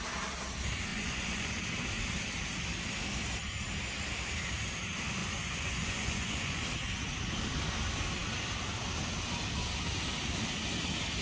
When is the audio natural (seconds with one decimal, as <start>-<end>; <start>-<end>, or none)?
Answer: 0.0-0.9; 1.6-5.2; 6.6-11.2